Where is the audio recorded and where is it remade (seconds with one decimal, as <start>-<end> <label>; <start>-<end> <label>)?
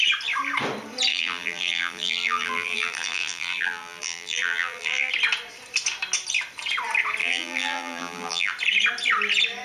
0.0-1.1 recorded; 1.1-5.1 remade; 5.1-7.2 recorded; 7.2-8.5 remade; 8.5-9.6 recorded